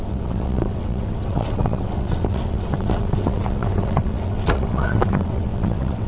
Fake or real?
fake